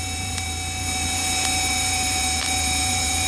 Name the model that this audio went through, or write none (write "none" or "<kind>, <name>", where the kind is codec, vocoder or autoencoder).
vocoder, Vocos